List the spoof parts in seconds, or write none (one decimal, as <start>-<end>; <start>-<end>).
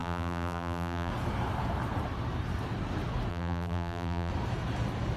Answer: 0.0-1.1; 3.3-4.3